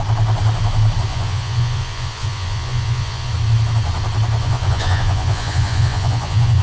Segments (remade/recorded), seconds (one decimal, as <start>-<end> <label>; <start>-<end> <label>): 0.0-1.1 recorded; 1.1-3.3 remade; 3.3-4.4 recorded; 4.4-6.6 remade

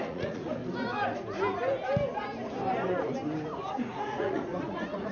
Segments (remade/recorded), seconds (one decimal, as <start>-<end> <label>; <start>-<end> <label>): 0.0-0.6 remade; 0.6-3.7 recorded; 3.7-5.1 remade

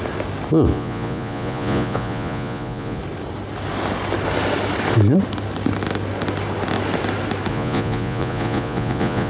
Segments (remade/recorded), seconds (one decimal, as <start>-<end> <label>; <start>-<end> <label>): 0.0-0.7 recorded; 0.7-3.0 remade; 3.0-7.5 recorded; 7.5-9.3 remade

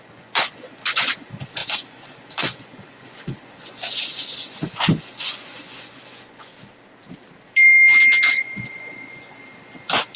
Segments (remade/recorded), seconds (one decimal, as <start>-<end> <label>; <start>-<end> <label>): 0.0-6.5 remade; 6.5-8.3 recorded; 8.3-9.5 remade; 9.5-10.2 recorded